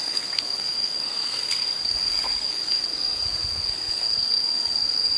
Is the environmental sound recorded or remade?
remade